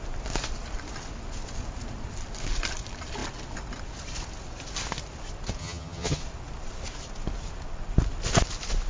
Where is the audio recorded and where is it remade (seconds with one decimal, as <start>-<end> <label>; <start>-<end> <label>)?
0.0-5.6 recorded; 5.6-6.2 remade; 6.2-8.9 recorded

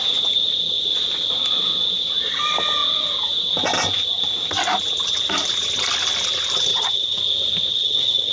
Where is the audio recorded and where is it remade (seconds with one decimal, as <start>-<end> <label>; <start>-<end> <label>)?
0.0-6.7 recorded; 6.7-7.2 remade; 7.2-7.7 recorded; 7.7-8.3 remade

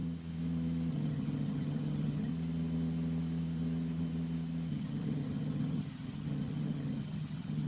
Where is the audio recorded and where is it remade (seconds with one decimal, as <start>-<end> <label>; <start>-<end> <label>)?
0.0-0.9 recorded; 0.9-2.3 remade; 2.3-4.7 recorded; 4.7-7.7 remade

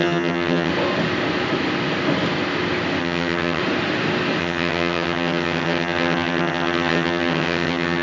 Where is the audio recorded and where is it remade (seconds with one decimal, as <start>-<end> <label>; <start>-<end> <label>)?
0.0-0.7 remade; 0.7-3.0 recorded; 3.0-3.6 remade; 3.6-4.4 recorded; 4.4-8.0 remade

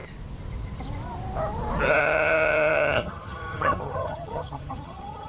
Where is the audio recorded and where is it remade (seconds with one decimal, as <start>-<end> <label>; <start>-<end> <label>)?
0.0-2.0 recorded; 2.0-5.3 remade

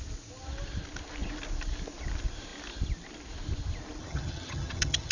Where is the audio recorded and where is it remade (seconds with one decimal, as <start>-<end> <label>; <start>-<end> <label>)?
0.0-4.0 recorded; 4.0-5.1 remade